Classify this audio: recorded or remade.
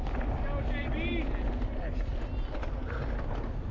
recorded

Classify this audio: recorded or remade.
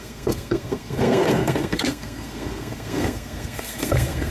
remade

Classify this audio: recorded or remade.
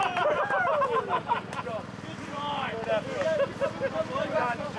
recorded